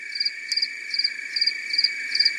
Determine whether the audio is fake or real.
real